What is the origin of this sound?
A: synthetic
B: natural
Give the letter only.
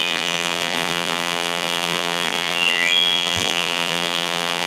A